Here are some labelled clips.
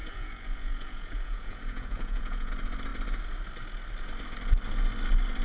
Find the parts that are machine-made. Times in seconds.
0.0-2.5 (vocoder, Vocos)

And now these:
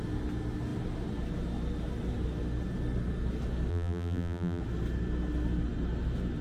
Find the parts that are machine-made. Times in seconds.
3.7-4.6 (vocoder, BigVGAN v2)

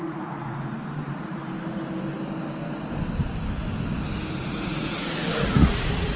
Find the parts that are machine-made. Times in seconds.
0.0-1.4 (vocoder, Vocos); 4.4-6.2

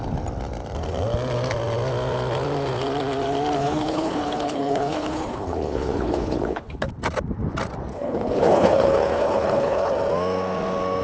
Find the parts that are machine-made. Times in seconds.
3.6-6.9 (codec, HILCodec); 7.9-9.9

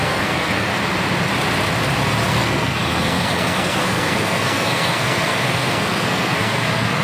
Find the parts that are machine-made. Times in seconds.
0.0-0.7 (codec, SNAC); 2.3-7.0

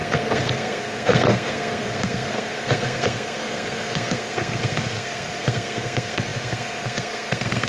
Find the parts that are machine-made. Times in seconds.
0.0-7.7 (codec, SNAC)

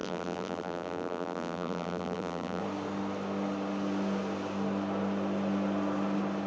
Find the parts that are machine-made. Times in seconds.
0.0-2.6 (vocoder, BigVGAN v2)

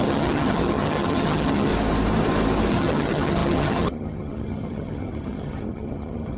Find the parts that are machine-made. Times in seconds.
0.0-1.7 (vocoder, HiFi-GAN); 2.7-6.4